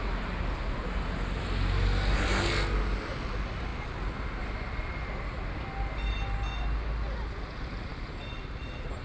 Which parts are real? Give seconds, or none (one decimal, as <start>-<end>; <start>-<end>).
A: 0.0-9.0